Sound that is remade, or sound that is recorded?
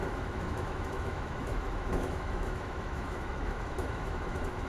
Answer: remade